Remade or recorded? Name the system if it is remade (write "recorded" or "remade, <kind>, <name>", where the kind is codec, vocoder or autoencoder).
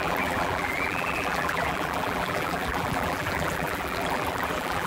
remade, vocoder, BigVGAN v2